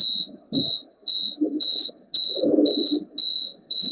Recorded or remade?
recorded